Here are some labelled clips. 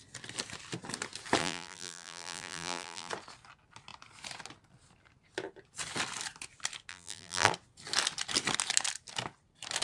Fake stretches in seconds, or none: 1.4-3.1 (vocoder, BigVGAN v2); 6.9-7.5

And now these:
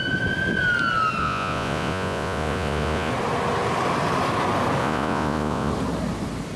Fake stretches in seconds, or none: 1.2-3.1 (vocoder, Vocos); 4.8-5.7